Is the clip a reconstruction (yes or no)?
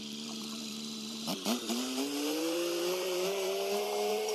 yes